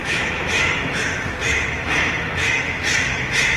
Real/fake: fake